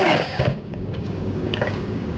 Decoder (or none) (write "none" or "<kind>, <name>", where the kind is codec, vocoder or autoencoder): codec, DAC